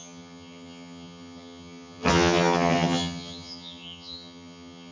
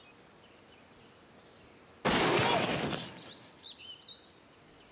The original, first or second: second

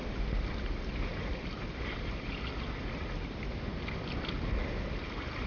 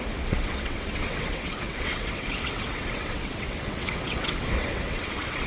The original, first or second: first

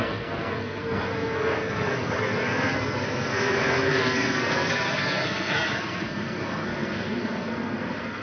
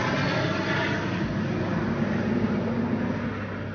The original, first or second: second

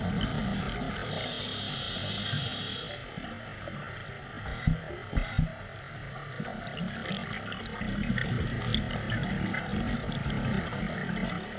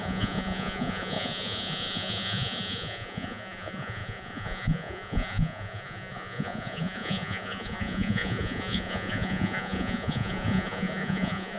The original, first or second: first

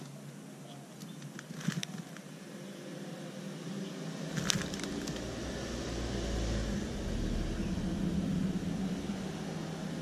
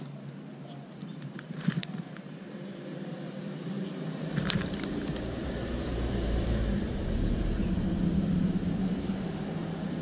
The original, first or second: first